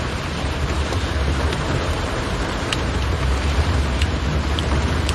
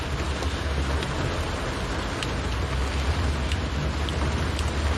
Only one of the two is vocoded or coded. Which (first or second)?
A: first